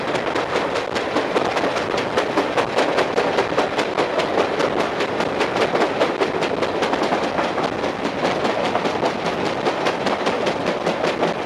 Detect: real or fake real